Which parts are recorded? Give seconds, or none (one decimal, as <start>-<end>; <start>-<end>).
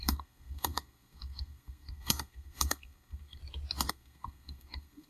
3.4-3.9